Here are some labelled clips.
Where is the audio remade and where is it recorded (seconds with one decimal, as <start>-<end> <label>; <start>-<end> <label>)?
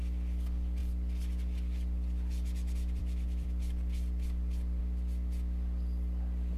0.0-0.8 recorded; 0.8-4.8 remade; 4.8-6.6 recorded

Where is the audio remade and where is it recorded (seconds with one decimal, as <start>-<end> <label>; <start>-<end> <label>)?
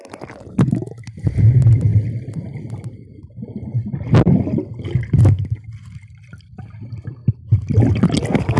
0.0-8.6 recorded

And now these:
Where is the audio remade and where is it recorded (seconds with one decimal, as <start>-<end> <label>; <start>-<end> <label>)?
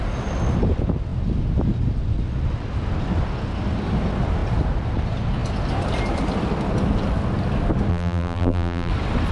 0.0-7.9 recorded; 7.9-8.9 remade; 8.9-9.3 recorded